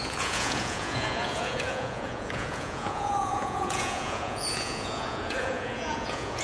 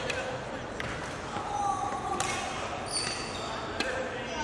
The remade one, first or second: first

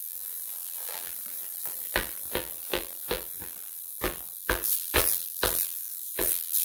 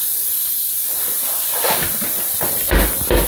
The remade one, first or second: first